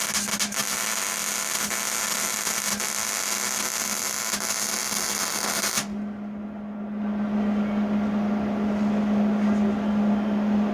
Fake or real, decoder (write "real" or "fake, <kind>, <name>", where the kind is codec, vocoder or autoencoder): real